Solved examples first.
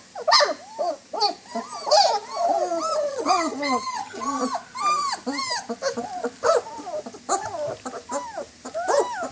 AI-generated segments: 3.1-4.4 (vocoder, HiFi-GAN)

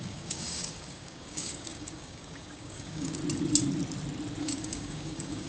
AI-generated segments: 0.0-3.2 (codec, DAC); 4.4-5.5

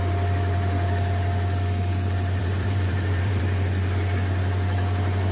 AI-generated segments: 2.4-3.4 (vocoder, BigVGAN v2)

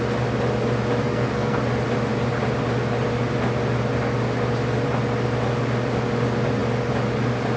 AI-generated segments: 1.0-1.6 (codec, SNAC)

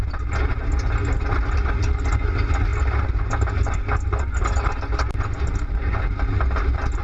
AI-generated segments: none

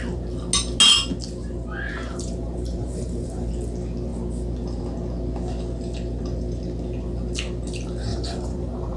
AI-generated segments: 1.9-3.5 (vocoder, BigVGAN v2); 8.1-9.0

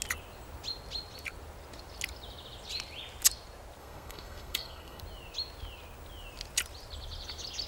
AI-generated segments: 3.8-5.0 (codec, SNAC)

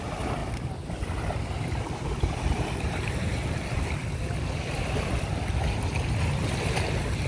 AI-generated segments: none